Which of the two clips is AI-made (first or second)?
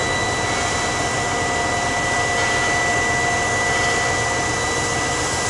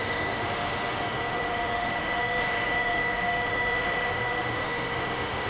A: second